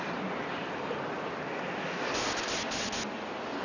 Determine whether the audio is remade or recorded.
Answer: recorded